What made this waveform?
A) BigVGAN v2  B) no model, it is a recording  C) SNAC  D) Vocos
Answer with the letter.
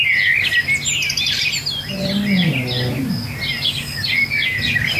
B